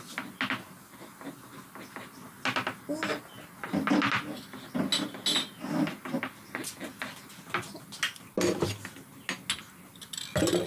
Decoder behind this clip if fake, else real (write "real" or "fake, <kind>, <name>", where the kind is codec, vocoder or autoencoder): real